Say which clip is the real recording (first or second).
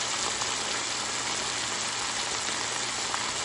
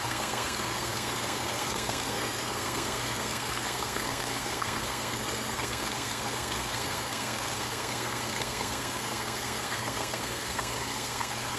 first